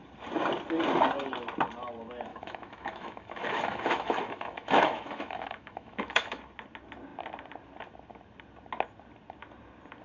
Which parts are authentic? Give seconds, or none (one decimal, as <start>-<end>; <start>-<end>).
0.0-2.3; 6.4-10.0